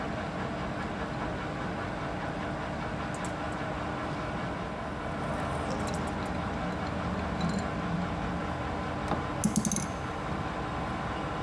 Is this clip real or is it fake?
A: real